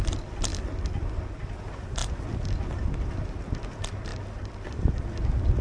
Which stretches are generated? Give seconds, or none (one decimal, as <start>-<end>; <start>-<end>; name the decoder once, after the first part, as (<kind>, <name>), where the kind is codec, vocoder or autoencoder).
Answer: none